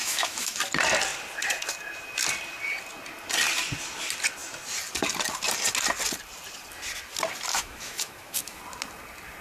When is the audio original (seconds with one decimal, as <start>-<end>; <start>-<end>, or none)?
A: 0.6-7.5; 8.6-9.4